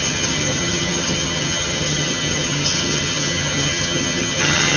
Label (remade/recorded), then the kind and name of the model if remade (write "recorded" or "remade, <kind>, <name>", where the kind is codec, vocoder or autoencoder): remade, vocoder, HiFi-GAN